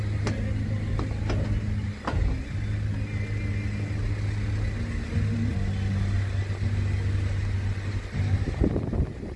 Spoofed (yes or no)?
no